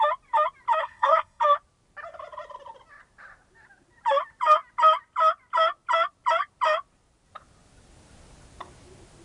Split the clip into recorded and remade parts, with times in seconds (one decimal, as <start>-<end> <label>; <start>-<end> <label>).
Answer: 0.0-0.8 recorded; 0.8-1.4 remade; 1.4-9.2 recorded